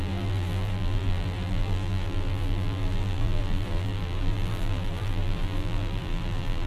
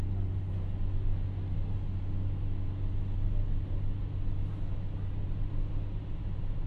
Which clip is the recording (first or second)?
second